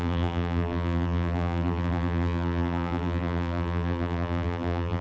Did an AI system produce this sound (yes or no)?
yes